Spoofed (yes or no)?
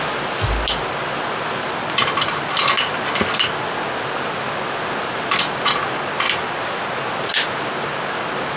no